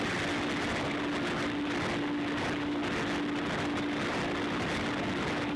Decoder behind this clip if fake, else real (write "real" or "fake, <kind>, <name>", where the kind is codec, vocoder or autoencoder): real